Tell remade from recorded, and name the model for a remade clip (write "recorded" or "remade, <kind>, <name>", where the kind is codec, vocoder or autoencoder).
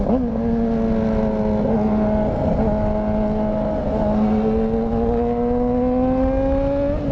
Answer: recorded